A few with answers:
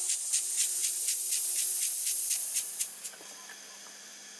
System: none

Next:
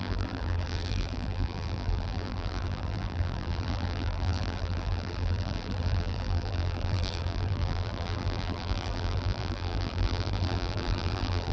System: vocoder, BigVGAN v2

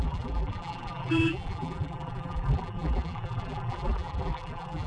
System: vocoder, BigVGAN v2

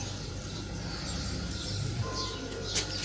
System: vocoder, BigVGAN v2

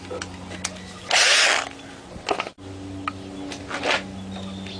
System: none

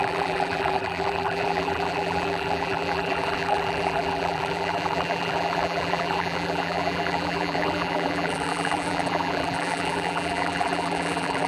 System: vocoder, BigVGAN v2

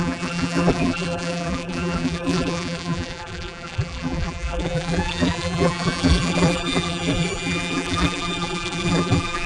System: vocoder, BigVGAN v2